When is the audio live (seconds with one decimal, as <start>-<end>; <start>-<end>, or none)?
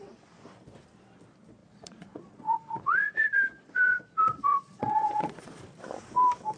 0.0-1.6; 5.6-6.6